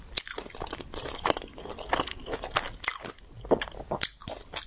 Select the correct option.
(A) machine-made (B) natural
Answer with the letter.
B